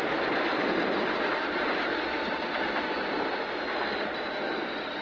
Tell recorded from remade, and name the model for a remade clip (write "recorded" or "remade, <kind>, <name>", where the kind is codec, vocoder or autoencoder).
recorded